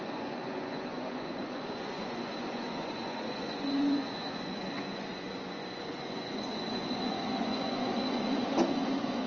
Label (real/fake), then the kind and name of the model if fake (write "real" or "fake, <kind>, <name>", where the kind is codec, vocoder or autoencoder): fake, vocoder, Vocos